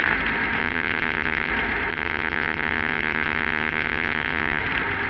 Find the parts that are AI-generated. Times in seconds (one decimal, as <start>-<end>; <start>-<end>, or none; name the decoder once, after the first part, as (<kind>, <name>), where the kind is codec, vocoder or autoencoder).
0.6-1.5 (vocoder, HiFi-GAN); 1.9-4.6